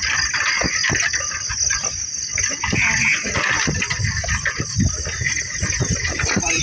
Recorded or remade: recorded